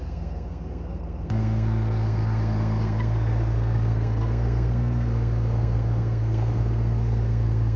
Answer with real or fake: fake